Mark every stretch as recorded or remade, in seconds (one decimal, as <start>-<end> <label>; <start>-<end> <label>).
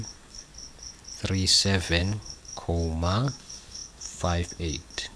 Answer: 0.0-0.5 remade; 0.5-2.0 recorded; 2.0-5.2 remade